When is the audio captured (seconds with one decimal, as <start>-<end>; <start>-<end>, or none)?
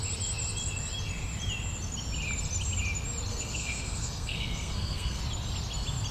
0.0-3.3; 5.2-6.1